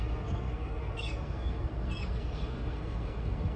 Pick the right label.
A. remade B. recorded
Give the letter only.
A